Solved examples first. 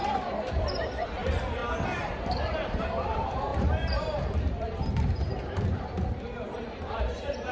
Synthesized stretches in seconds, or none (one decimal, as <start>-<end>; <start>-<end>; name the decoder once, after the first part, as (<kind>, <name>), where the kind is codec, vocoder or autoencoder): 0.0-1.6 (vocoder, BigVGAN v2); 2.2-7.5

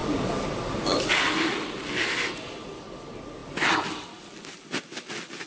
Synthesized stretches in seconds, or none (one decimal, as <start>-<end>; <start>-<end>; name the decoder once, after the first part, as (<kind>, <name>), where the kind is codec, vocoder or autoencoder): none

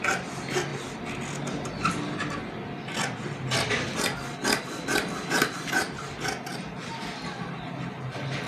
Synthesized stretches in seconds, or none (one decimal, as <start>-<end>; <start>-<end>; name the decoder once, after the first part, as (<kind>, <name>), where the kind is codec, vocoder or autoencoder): none

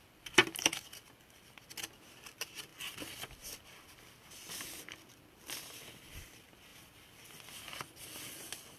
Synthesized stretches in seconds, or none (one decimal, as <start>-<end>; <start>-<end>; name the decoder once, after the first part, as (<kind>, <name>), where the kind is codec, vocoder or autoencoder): none

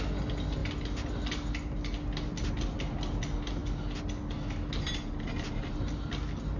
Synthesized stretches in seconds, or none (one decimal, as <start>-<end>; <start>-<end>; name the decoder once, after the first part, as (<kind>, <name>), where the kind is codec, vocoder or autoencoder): none